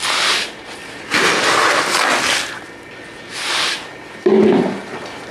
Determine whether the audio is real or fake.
real